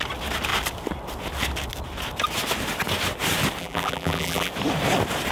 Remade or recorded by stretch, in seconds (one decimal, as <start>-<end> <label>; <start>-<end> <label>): 0.0-3.6 recorded; 3.6-4.5 remade; 4.5-5.3 recorded